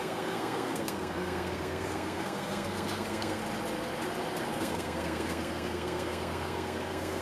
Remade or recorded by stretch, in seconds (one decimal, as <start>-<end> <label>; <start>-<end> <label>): 0.0-3.4 remade; 3.4-4.4 recorded; 4.4-7.2 remade